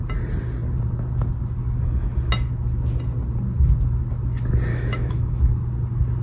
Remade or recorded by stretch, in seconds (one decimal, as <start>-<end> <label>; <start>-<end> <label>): 0.0-4.7 recorded; 4.7-5.5 remade; 5.5-6.2 recorded